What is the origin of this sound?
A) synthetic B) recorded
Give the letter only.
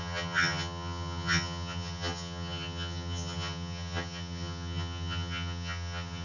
A